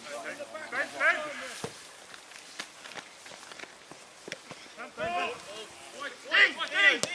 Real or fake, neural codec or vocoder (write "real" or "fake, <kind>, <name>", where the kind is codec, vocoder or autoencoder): real